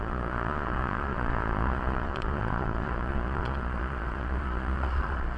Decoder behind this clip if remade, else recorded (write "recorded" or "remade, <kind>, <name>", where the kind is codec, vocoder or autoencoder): remade, vocoder, Vocos